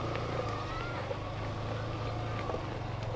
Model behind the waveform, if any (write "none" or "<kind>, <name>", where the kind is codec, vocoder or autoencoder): none